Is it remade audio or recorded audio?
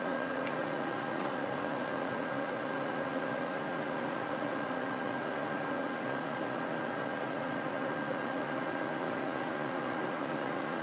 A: remade